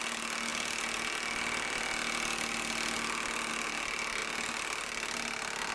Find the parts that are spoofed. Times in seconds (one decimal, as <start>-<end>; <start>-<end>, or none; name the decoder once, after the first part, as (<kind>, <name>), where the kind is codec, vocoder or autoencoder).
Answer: none